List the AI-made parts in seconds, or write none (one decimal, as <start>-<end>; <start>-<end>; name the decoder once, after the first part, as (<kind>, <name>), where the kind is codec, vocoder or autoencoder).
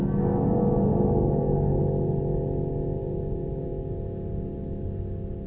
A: 0.9-1.8 (codec, DAC); 3.0-3.9